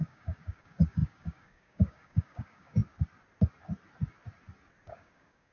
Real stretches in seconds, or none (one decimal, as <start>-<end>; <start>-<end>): 2.8-4.9